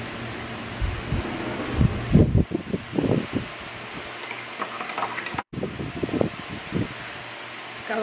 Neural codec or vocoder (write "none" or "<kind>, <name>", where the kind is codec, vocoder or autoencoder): none